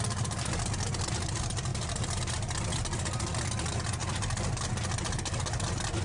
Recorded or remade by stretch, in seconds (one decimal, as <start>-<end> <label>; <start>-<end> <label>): 0.0-1.7 recorded; 1.7-2.2 remade; 2.2-4.0 recorded; 4.0-4.7 remade; 4.7-6.0 recorded